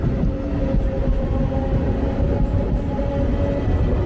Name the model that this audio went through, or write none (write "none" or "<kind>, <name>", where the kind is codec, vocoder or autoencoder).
none